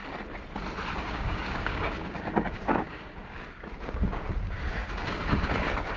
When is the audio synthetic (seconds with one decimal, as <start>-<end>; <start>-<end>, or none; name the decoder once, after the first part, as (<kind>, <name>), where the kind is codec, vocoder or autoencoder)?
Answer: 1.0-6.0 (codec, DAC)